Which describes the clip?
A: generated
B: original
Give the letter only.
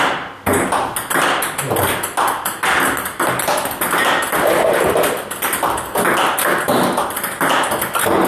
B